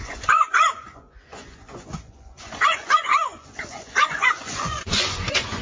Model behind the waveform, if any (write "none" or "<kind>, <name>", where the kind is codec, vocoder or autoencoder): vocoder, Vocos